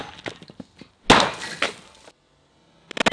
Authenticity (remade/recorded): recorded